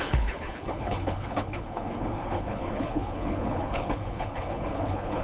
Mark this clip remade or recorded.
remade